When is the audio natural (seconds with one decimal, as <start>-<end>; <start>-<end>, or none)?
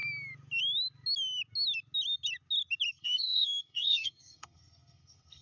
0.0-2.9